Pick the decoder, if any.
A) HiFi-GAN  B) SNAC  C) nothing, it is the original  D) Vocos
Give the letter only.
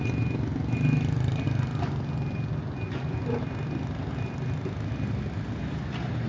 C